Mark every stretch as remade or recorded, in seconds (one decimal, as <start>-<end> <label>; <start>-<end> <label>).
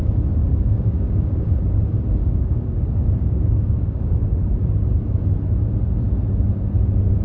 0.0-0.4 recorded; 0.4-1.6 remade; 1.6-2.2 recorded; 2.2-4.0 remade; 4.0-7.2 recorded